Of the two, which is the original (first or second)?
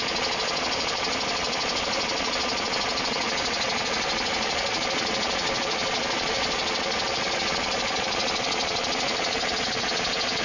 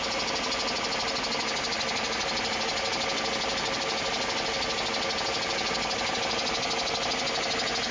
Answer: second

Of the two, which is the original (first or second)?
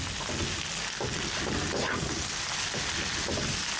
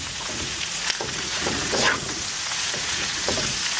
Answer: first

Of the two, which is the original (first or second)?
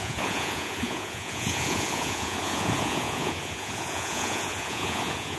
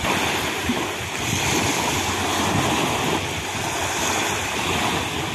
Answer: second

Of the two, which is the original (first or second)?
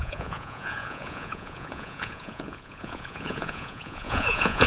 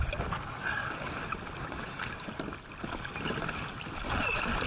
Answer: second